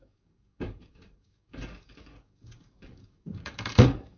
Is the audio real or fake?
fake